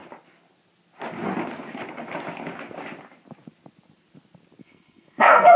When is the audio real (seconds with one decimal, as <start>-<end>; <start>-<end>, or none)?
0.0-4.6